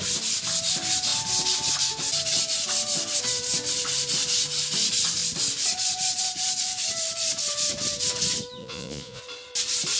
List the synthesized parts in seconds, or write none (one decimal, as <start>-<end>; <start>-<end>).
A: 8.6-9.2